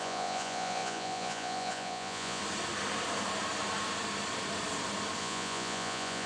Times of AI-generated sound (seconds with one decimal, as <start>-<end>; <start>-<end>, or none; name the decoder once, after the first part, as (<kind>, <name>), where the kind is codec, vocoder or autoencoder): 0.0-2.4 (vocoder, Vocos); 5.2-6.3